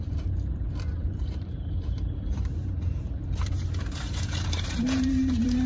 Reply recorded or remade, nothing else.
remade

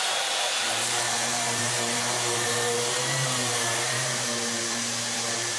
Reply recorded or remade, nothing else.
remade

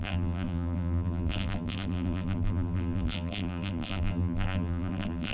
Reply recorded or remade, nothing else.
remade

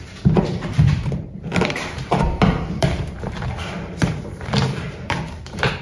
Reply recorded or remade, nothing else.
remade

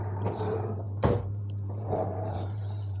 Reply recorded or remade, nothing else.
remade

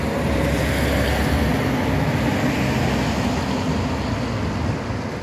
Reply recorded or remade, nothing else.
recorded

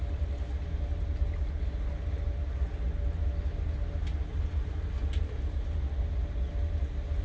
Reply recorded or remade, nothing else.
recorded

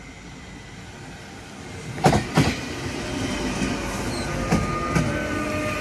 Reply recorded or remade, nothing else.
recorded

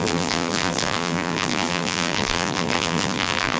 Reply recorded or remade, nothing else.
remade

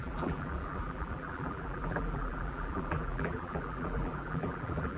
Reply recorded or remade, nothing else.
remade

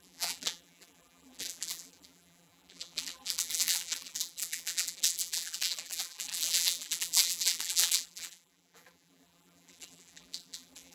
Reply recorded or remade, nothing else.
remade